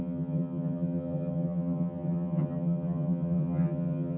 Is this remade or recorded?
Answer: remade